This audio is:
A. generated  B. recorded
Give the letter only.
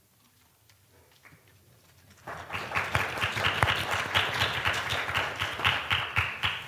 B